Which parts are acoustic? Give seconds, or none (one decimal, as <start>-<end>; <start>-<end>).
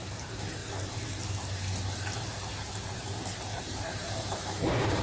0.6-3.6